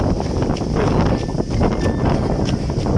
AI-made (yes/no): no